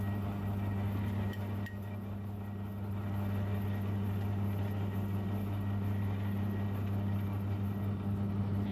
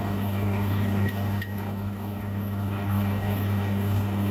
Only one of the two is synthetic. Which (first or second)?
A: second